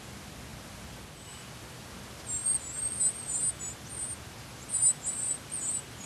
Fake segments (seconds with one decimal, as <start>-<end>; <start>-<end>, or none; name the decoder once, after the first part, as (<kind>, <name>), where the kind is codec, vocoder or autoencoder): none